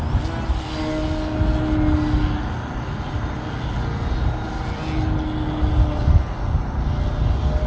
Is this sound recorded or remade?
recorded